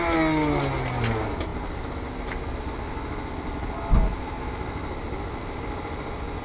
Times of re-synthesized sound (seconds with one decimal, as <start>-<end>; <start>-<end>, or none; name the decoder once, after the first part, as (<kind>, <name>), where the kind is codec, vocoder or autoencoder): none